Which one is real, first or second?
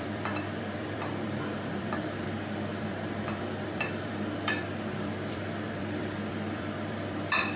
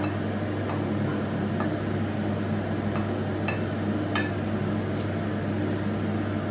second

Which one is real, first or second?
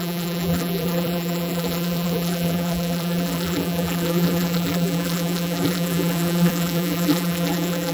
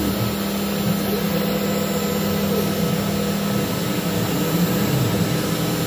second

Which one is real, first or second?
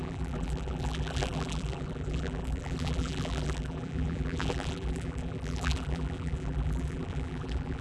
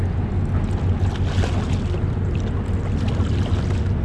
second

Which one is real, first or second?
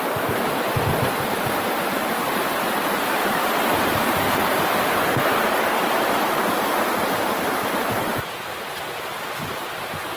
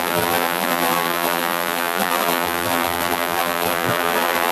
first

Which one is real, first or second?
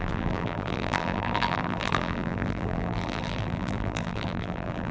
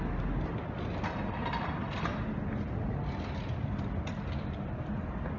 second